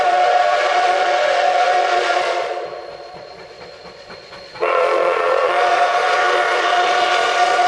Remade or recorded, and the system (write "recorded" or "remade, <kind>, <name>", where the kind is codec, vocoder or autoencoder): remade, vocoder, Vocos